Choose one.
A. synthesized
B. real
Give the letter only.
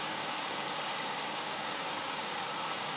A